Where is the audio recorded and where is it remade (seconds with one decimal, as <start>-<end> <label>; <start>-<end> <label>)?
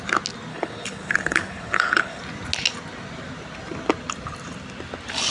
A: 0.0-0.5 recorded; 0.5-2.2 remade; 2.2-5.3 recorded